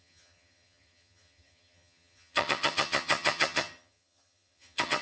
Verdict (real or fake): fake